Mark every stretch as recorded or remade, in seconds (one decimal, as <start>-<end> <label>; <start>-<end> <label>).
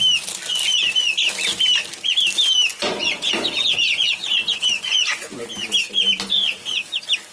0.0-2.7 recorded; 2.7-5.4 remade; 5.4-7.3 recorded